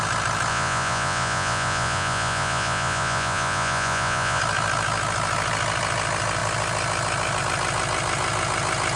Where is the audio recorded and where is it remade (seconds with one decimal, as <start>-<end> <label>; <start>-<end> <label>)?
0.0-0.5 recorded; 0.5-4.4 remade; 4.4-9.0 recorded